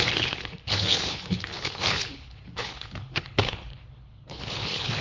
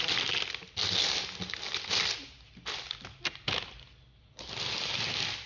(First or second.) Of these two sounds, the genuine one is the second